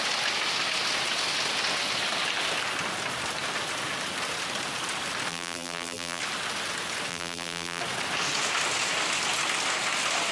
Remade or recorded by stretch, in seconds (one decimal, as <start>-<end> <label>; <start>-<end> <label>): 0.0-5.3 recorded; 5.3-6.2 remade; 6.2-7.1 recorded; 7.1-7.8 remade; 7.8-10.3 recorded